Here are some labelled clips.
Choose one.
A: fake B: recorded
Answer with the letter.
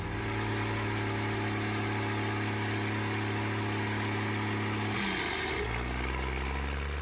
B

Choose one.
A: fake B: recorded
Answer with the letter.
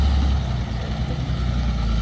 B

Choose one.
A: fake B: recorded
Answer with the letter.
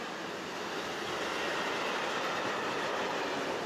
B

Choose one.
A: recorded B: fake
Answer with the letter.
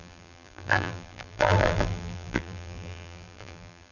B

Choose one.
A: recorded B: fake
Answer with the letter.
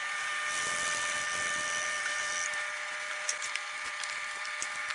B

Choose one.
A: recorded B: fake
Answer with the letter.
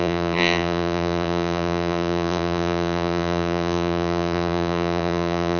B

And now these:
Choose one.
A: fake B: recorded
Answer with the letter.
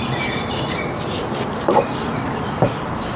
A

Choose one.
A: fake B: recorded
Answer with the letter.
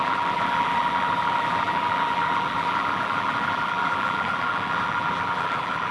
A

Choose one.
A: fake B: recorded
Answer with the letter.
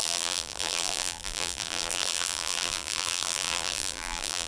A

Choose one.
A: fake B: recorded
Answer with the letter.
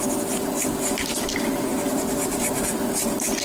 A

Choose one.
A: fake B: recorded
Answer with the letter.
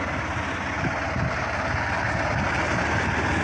B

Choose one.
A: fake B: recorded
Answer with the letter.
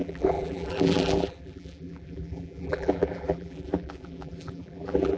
A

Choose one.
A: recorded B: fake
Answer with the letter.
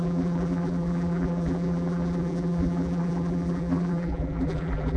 B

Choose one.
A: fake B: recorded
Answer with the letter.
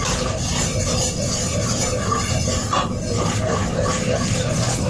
B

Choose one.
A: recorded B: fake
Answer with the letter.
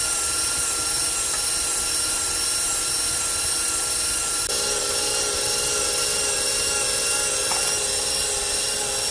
A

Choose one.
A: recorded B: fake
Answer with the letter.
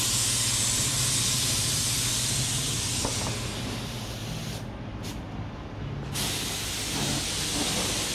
A